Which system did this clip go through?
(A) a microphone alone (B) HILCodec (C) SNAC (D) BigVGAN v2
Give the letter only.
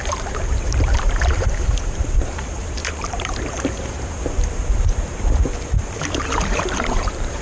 D